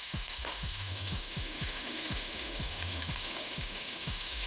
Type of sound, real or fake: fake